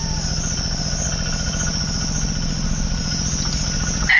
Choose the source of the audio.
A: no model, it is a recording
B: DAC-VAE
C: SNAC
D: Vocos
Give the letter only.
A